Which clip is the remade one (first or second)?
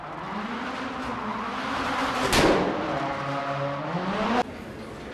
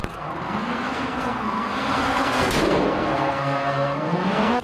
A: second